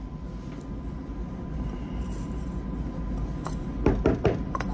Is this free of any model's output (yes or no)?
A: yes